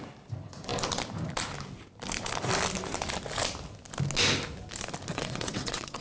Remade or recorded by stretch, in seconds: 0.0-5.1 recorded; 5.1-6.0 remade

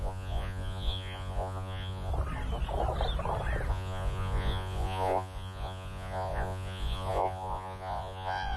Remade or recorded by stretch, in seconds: 0.0-2.1 remade; 2.1-3.7 recorded; 3.7-8.6 remade